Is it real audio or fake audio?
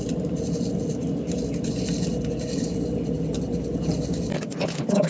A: real